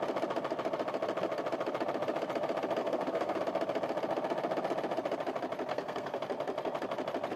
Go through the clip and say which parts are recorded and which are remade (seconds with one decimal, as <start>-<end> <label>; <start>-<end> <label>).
0.0-2.8 recorded; 2.8-3.4 remade; 3.4-5.7 recorded; 5.7-6.2 remade; 6.2-7.4 recorded